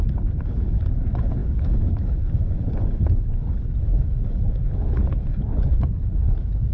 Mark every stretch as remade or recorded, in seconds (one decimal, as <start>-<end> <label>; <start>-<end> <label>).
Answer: 0.0-6.7 remade